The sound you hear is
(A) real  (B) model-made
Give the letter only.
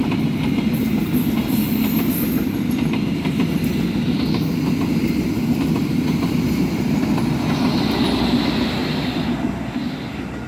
A